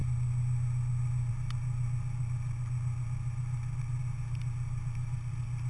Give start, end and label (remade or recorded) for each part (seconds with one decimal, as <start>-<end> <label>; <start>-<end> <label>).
0.0-5.7 recorded

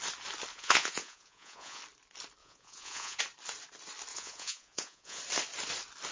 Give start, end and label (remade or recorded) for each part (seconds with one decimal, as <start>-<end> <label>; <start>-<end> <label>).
0.0-0.5 recorded; 0.5-1.8 remade; 1.8-2.4 recorded; 2.4-3.2 remade; 3.2-4.1 recorded; 4.1-5.2 remade; 5.2-6.1 recorded

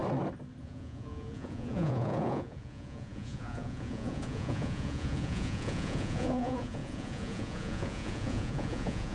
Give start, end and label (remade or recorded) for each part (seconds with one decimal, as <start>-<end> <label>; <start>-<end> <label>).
0.0-0.6 recorded; 0.6-9.1 remade

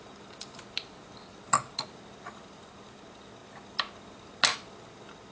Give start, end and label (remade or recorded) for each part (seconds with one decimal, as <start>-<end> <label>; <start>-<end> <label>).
0.0-5.3 recorded

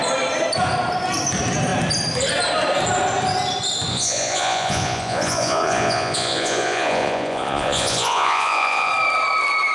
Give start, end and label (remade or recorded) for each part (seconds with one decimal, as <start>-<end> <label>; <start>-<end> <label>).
0.0-3.9 recorded; 3.9-8.9 remade; 8.9-9.7 recorded

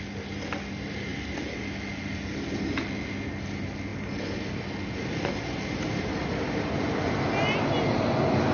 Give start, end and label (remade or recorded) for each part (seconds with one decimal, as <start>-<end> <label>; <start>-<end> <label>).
0.0-8.5 recorded

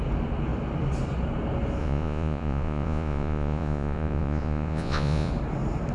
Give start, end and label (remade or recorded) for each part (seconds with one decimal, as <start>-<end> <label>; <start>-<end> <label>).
0.0-1.8 recorded; 1.8-5.3 remade; 5.3-5.9 recorded